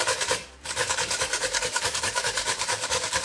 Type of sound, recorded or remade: remade